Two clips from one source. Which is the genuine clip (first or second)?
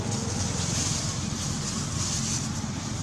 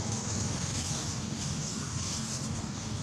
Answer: first